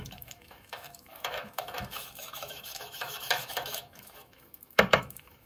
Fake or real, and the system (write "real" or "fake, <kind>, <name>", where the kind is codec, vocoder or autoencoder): fake, autoencoder, DAC-VAE